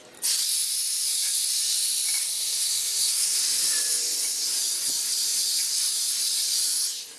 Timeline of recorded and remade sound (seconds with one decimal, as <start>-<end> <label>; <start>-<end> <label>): 0.0-2.2 recorded; 2.2-3.4 remade; 3.4-7.2 recorded